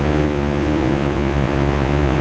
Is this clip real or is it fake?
fake